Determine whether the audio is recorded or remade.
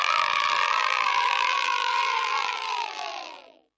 remade